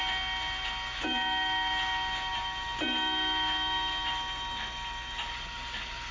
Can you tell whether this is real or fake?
real